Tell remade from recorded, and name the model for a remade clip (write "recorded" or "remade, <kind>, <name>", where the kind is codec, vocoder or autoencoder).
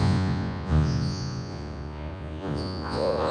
remade, vocoder, Vocos